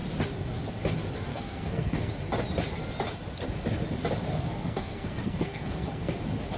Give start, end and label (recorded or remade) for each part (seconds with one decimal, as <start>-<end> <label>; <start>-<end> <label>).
0.0-1.3 recorded; 1.3-2.1 remade; 2.1-4.3 recorded; 4.3-6.1 remade; 6.1-6.6 recorded